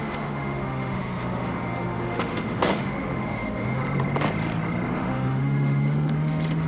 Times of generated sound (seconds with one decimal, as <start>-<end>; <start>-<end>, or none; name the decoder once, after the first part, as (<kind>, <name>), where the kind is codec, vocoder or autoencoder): 0.0-3.8 (autoencoder, DAC-VAE); 4.9-6.7